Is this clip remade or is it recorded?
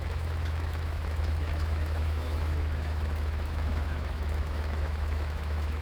remade